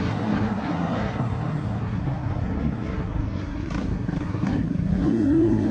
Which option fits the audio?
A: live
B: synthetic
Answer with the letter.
B